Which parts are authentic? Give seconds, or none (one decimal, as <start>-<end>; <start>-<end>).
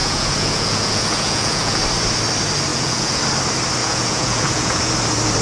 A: 1.8-2.7; 3.2-3.8; 4.9-5.4